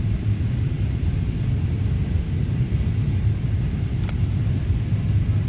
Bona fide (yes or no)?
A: yes